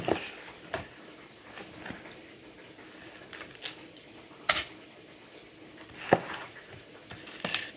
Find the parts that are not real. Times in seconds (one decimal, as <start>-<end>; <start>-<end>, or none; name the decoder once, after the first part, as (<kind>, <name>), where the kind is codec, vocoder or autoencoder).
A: 6.4-7.0 (vocoder, Vocos)